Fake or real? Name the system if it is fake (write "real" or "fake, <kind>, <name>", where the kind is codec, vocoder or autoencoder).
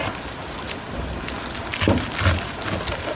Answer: real